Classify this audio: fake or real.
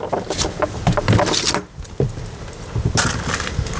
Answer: real